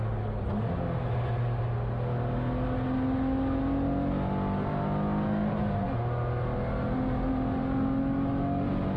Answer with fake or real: real